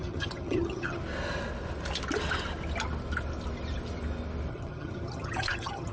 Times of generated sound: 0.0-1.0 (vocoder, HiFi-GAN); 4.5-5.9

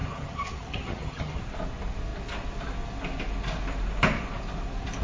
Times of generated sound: 0.0-1.4 (vocoder, HiFi-GAN)

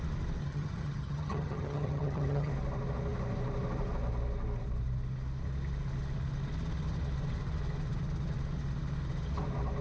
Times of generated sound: 0.4-2.5 (vocoder, HiFi-GAN)

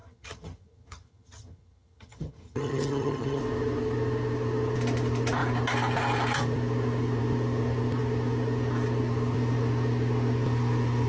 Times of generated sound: 0.0-3.4 (vocoder, HiFi-GAN)

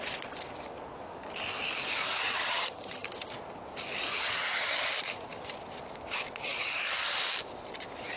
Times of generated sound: 2.0-3.1 (vocoder, HiFi-GAN); 4.1-4.9

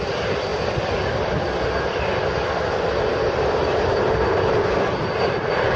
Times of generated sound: none

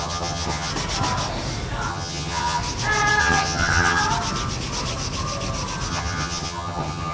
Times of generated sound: 0.0-0.7 (vocoder, HiFi-GAN); 1.9-2.6; 3.2-4.0; 5.9-7.1